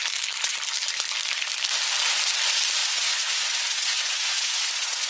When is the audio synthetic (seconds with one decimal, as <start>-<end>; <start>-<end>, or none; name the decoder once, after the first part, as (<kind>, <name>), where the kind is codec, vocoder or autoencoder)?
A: 2.8-5.1 (vocoder, Vocos)